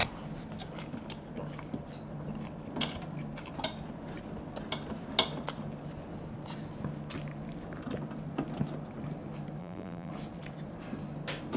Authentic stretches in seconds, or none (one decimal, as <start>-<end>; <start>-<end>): 0.0-9.6; 10.1-11.6